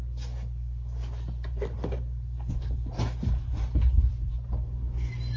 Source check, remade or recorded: recorded